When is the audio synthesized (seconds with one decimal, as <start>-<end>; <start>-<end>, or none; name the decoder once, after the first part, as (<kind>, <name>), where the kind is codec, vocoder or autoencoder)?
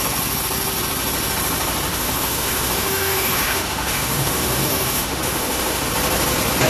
1.9-5.9 (autoencoder, DAC-VAE)